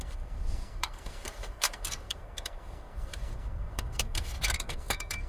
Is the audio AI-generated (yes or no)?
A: yes